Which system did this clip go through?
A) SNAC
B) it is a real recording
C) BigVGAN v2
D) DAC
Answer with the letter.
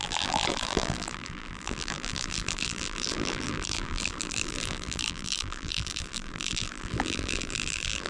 C